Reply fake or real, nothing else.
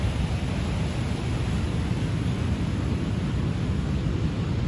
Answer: real